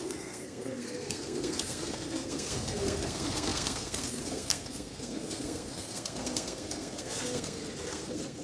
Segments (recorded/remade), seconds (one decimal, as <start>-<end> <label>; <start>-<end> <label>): 0.0-8.4 remade